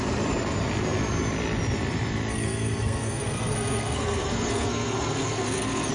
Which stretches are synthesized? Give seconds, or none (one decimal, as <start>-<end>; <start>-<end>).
2.3-5.9